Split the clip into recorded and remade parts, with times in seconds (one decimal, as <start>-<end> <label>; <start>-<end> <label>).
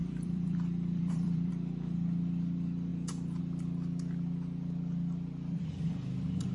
0.0-1.5 remade; 1.5-2.9 recorded; 2.9-3.4 remade; 3.4-6.5 recorded